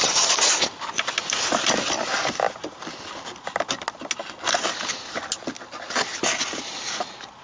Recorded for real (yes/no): yes